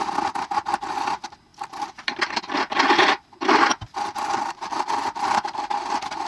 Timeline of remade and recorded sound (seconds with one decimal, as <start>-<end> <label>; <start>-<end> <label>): 0.0-1.5 recorded; 1.5-2.4 remade; 2.4-3.7 recorded; 3.7-5.6 remade; 5.6-6.3 recorded